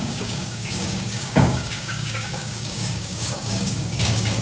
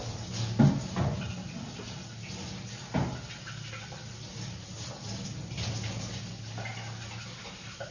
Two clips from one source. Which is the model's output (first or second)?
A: first